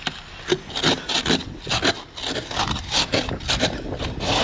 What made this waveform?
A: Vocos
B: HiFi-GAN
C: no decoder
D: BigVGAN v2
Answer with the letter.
C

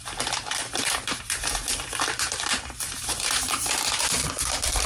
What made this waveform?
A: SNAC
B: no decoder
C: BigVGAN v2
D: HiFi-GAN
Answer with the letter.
C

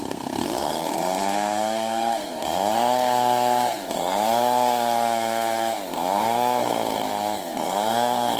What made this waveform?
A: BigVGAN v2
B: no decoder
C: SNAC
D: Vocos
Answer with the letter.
C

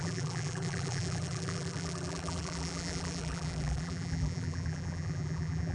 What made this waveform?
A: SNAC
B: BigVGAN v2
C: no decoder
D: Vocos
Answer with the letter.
B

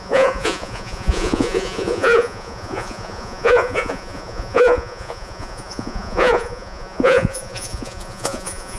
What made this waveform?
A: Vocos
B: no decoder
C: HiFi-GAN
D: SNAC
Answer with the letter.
A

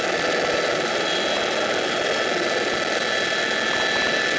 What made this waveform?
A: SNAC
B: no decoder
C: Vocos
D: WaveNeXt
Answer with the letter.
B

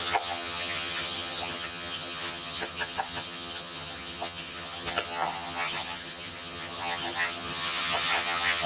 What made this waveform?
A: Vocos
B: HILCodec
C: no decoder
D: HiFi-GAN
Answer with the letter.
D